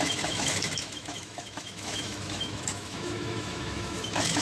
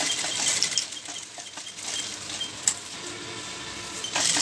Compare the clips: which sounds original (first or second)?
second